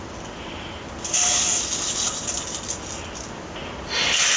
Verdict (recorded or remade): recorded